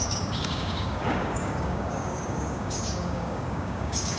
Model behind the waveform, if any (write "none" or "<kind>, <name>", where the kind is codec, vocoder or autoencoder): codec, DAC